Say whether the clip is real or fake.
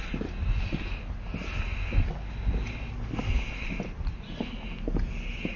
real